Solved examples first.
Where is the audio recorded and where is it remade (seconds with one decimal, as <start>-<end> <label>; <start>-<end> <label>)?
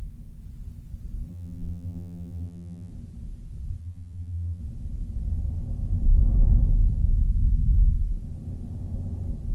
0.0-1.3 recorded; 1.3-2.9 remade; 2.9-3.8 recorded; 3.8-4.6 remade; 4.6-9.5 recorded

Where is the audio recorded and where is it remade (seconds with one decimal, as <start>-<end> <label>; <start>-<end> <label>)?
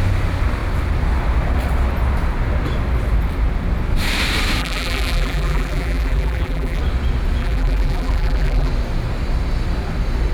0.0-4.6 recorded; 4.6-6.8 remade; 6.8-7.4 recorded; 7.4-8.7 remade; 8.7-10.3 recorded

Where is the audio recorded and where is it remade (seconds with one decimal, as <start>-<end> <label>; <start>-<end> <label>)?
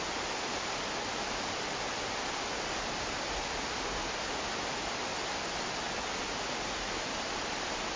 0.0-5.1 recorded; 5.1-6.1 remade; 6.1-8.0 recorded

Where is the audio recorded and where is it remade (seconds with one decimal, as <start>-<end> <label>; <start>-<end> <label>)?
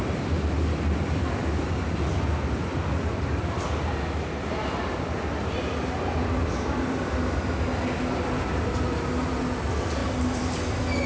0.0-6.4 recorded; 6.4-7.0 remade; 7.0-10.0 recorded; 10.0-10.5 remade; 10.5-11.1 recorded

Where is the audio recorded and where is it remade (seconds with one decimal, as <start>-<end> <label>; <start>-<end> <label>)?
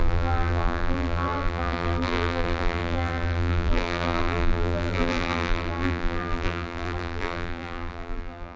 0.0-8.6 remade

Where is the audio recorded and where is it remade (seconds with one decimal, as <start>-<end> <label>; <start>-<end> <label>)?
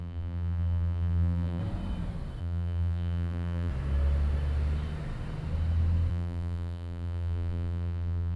0.0-1.6 remade; 1.6-2.4 recorded; 2.4-3.7 remade; 3.7-6.1 recorded; 6.1-8.4 remade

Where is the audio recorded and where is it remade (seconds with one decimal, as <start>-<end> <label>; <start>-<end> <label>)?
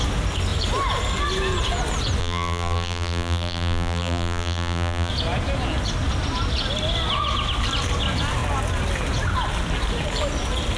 0.0-2.2 recorded; 2.2-5.1 remade; 5.1-10.8 recorded